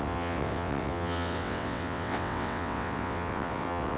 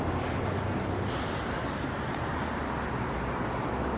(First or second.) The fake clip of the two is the first